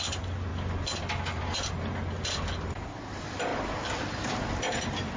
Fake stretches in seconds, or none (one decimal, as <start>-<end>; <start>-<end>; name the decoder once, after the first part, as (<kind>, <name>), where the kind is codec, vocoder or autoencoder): 0.0-0.5 (vocoder, BigVGAN v2); 3.1-5.2